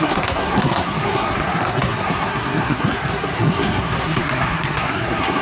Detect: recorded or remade remade